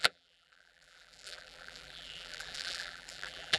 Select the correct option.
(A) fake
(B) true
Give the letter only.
A